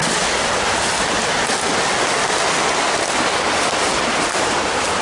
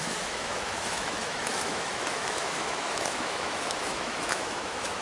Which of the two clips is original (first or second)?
first